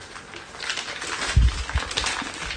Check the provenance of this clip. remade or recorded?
recorded